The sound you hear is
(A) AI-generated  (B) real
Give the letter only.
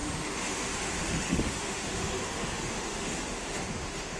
A